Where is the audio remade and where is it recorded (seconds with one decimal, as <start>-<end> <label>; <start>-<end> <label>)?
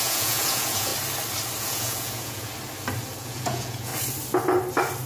0.0-0.9 remade; 0.9-1.6 recorded; 1.6-2.5 remade; 2.5-3.2 recorded; 3.2-3.9 remade; 3.9-5.1 recorded